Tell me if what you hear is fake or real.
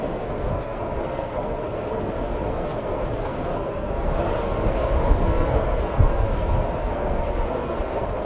fake